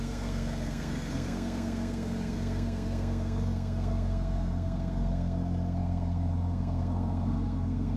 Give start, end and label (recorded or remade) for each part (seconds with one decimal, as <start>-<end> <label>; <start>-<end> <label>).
0.0-8.0 remade